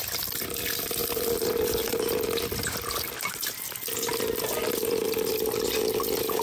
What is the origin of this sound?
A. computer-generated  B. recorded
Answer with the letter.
B